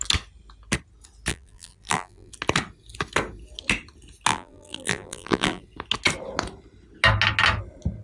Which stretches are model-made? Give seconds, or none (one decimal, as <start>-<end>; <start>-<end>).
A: 1.3-2.3; 4.3-5.6